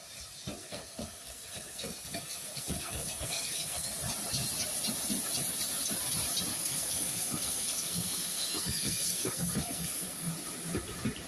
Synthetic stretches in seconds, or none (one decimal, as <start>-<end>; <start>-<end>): 0.6-3.9; 6.5-10.3